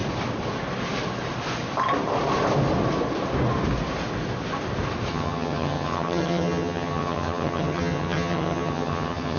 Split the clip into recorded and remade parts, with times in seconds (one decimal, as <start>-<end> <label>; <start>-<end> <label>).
0.0-5.1 recorded; 5.1-9.4 remade